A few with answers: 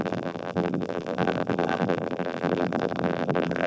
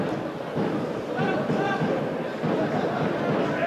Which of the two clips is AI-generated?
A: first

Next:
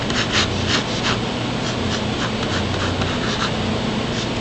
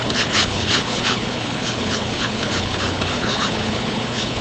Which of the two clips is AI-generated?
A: second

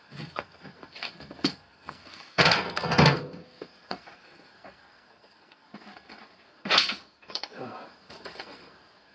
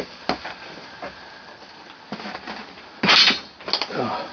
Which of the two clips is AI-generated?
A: first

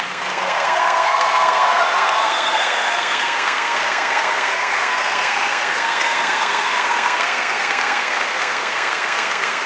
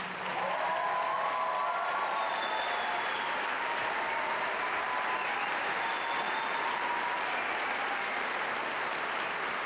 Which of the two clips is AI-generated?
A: first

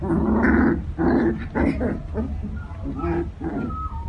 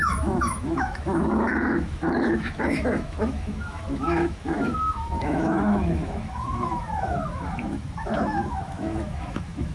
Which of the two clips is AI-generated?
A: second